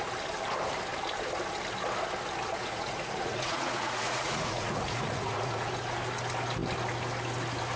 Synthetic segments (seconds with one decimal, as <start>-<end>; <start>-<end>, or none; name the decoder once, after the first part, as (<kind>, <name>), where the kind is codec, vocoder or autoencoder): 2.6-5.7 (vocoder, Vocos)